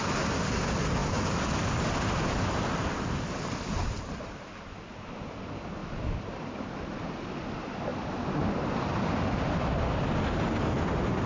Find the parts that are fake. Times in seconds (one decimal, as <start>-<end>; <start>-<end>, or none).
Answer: none